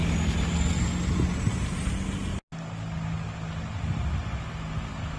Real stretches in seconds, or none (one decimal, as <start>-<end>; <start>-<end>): 0.0-5.2